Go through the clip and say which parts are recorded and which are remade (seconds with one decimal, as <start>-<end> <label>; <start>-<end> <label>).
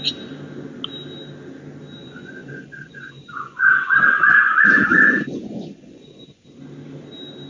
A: 0.0-2.0 recorded; 2.0-6.4 remade; 6.4-7.5 recorded